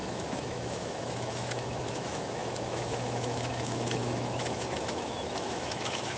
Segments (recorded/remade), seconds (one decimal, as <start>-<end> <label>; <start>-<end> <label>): 0.0-6.2 remade